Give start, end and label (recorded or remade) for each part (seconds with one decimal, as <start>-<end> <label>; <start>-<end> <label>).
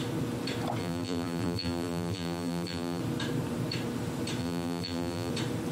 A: 0.0-0.8 recorded; 0.8-3.0 remade; 3.0-4.4 recorded; 4.4-5.3 remade; 5.3-5.7 recorded